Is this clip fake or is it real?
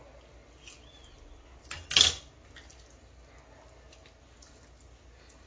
real